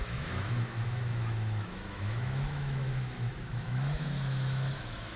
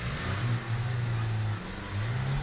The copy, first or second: first